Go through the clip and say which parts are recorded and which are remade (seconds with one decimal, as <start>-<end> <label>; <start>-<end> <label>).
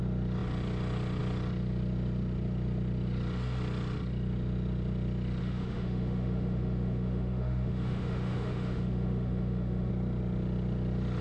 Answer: 0.0-5.4 recorded; 5.4-9.9 remade; 9.9-11.2 recorded